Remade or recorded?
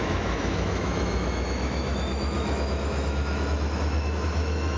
remade